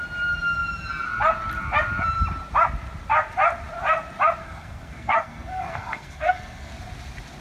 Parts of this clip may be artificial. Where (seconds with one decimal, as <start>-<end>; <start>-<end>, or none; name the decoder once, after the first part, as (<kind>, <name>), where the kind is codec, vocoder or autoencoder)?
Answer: 4.4-6.7 (codec, SNAC)